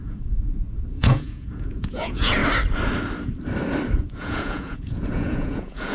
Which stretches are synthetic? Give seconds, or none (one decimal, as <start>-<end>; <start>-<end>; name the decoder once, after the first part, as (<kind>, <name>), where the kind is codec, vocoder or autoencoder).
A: 0.0-2.4 (vocoder, Vocos); 4.0-5.9